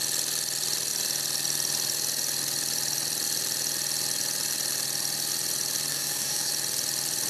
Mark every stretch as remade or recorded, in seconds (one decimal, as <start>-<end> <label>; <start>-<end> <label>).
0.0-5.9 recorded; 5.9-6.5 remade; 6.5-7.3 recorded